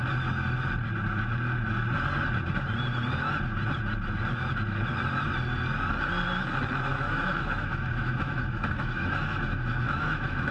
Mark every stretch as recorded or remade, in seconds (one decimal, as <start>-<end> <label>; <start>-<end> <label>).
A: 0.0-6.9 recorded; 6.9-10.5 remade